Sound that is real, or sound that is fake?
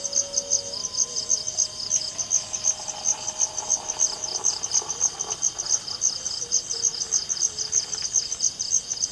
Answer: real